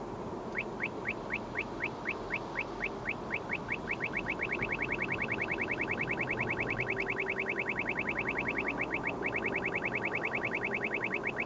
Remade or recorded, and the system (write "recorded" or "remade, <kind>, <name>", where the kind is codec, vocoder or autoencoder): recorded